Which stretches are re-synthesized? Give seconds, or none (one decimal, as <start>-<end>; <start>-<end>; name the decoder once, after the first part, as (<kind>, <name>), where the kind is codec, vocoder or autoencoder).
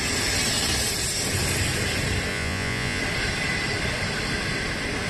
2.3-3.0 (vocoder, Vocos)